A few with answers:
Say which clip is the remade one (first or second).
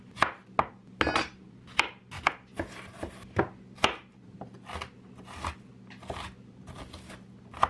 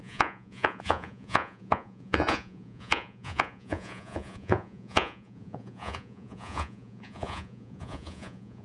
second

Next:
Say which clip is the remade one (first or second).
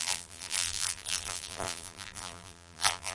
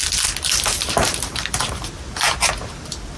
first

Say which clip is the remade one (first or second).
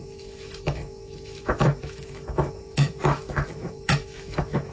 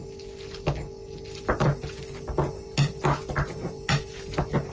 first